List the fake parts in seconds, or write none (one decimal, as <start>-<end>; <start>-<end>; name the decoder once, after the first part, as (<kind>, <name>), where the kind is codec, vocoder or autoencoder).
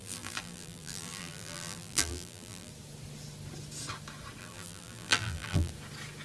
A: 0.0-2.7 (vocoder, BigVGAN v2); 4.4-5.7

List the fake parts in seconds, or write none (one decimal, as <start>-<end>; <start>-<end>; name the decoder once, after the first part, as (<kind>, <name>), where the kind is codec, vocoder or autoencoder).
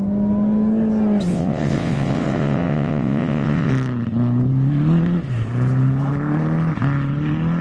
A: 1.3-3.7 (vocoder, WaveNeXt)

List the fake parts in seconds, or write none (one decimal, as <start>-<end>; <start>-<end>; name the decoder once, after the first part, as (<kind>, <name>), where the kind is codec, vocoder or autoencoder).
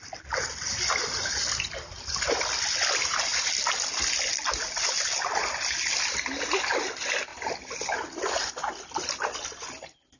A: none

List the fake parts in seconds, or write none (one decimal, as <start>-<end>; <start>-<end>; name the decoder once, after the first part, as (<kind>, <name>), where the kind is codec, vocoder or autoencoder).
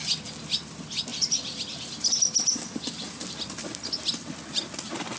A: none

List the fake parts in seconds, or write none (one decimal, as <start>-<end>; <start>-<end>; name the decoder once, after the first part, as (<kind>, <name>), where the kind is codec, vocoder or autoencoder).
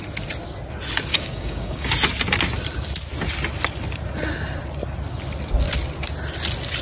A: 1.1-1.9 (codec, DAC)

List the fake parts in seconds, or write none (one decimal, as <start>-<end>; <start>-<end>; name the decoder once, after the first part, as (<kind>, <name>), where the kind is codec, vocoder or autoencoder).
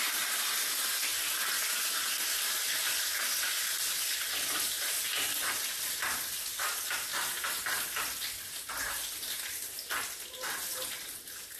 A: none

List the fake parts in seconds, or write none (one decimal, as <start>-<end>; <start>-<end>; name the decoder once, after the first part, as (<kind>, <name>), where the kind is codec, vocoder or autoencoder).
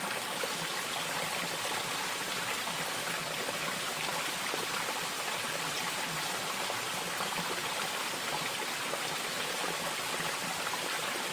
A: none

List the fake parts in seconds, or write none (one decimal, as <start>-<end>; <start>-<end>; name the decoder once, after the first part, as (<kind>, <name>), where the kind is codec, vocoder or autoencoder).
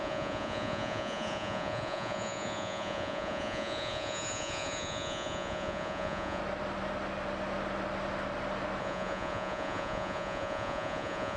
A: 0.0-6.4 (vocoder, Vocos); 8.8-11.4